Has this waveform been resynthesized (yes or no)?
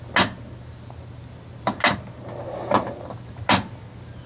no